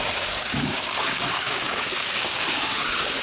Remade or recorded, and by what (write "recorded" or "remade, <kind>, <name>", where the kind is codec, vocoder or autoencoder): remade, codec, DAC